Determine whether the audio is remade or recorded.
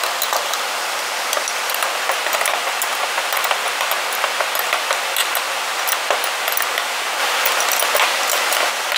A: recorded